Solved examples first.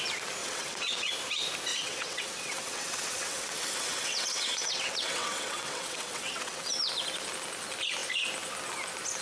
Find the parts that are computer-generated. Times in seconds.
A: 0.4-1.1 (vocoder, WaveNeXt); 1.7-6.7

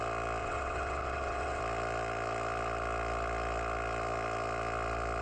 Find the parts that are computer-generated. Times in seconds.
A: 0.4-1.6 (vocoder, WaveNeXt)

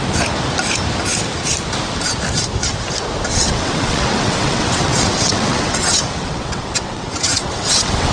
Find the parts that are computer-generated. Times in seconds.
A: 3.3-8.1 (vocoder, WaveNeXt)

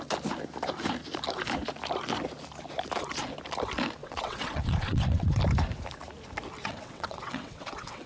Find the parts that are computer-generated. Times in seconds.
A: 4.0-5.4 (vocoder, WaveNeXt); 6.6-8.1

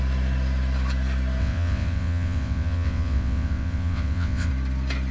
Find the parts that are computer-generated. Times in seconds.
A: 1.4-4.5 (vocoder, WaveNeXt)

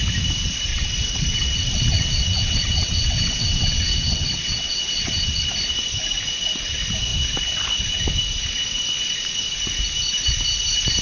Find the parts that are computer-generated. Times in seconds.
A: 0.7-5.4 (vocoder, WaveNeXt)

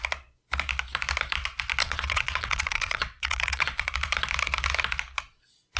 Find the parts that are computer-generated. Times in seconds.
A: 1.8-3.9 (vocoder, WaveNeXt)